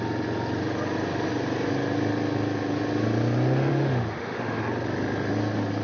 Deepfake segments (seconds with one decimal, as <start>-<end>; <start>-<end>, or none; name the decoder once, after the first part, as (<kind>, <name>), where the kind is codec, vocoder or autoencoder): 3.7-4.6 (autoencoder, DAC-VAE)